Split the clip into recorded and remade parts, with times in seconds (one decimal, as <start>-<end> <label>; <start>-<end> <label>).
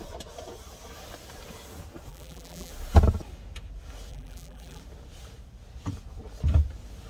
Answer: 0.0-2.1 recorded; 2.1-2.7 remade; 2.7-4.1 recorded; 4.1-4.8 remade; 4.8-7.1 recorded